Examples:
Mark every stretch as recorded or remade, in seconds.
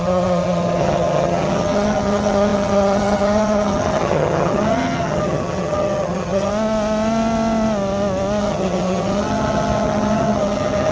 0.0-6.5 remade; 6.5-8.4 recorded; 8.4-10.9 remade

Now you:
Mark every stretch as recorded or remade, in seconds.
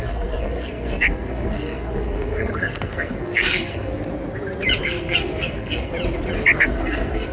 0.0-3.9 remade; 3.9-4.8 recorded; 4.8-5.9 remade; 5.9-6.6 recorded; 6.6-7.3 remade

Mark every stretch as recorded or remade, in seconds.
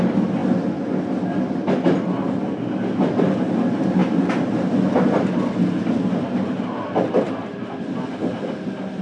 0.0-9.0 recorded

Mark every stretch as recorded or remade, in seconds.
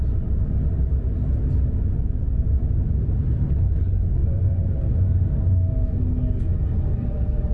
0.0-4.2 recorded; 4.2-5.1 remade; 5.1-7.5 recorded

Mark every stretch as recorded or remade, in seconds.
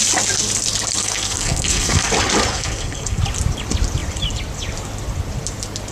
0.0-1.0 recorded; 1.0-2.1 remade; 2.1-2.5 recorded; 2.5-3.2 remade; 3.2-5.9 recorded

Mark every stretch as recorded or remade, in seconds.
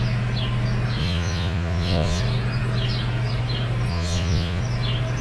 0.0-1.0 recorded; 1.0-2.2 remade; 2.2-3.9 recorded; 3.9-4.6 remade; 4.6-5.2 recorded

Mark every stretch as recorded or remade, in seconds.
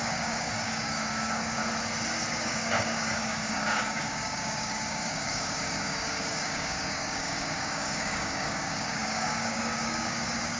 0.0-1.6 remade; 1.6-2.3 recorded; 2.3-10.6 remade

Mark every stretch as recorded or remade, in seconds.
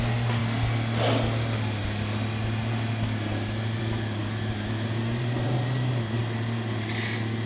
0.0-4.2 recorded; 4.2-6.2 remade; 6.2-7.5 recorded